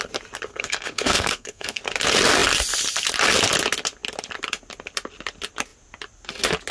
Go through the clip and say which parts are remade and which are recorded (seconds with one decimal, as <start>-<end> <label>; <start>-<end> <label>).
0.0-0.5 recorded; 0.5-1.8 remade; 1.8-6.7 recorded

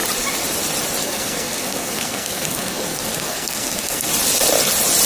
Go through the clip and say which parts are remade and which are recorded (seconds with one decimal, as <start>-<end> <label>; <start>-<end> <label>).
0.0-1.0 recorded; 1.0-4.1 remade; 4.1-5.1 recorded

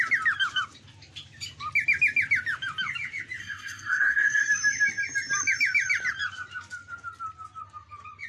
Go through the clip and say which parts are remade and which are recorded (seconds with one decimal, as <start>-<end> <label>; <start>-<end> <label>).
0.0-3.4 recorded; 3.4-4.5 remade; 4.5-8.3 recorded

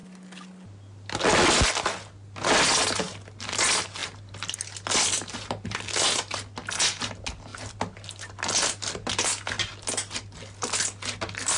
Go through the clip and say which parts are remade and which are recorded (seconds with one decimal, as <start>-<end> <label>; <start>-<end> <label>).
0.0-11.6 recorded